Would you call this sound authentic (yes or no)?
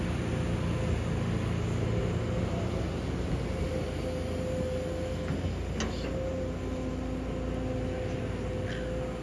yes